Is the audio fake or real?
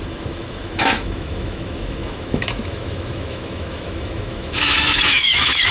fake